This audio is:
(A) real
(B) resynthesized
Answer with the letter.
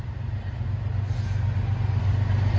A